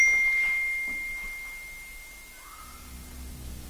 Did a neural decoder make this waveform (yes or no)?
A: no